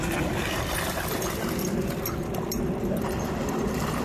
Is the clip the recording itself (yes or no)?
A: yes